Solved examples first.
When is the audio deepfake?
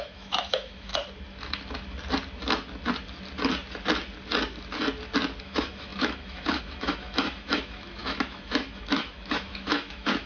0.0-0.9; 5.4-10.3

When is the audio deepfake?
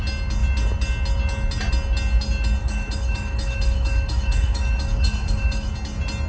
2.6-5.7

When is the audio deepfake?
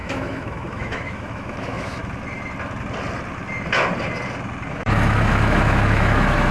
0.0-2.0; 4.7-6.5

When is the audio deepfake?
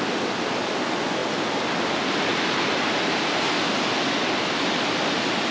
none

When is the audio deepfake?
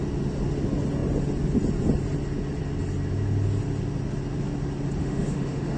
5.0-5.8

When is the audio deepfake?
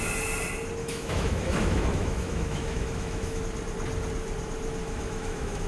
0.8-3.4; 4.8-5.7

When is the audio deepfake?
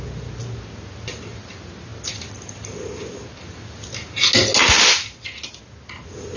none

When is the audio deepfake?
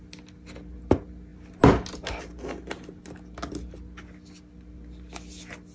none